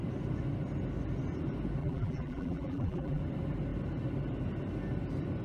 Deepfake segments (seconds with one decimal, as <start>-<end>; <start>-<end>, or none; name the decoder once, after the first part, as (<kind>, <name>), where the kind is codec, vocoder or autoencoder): 1.8-3.2 (vocoder, BigVGAN v2)